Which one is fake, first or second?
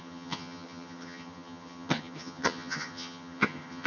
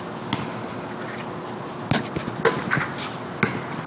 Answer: first